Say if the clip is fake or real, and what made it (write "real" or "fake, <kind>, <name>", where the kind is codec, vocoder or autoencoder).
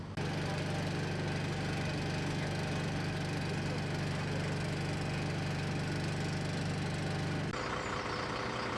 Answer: real